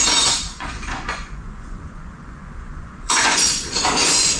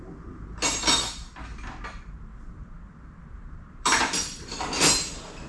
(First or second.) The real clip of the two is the second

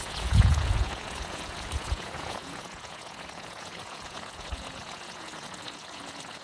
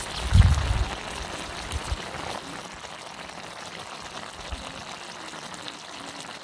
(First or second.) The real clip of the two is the second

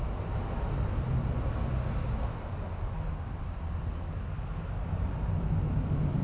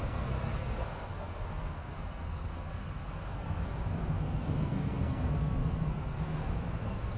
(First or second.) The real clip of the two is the first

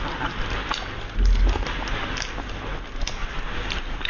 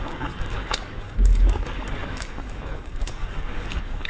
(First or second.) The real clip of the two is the first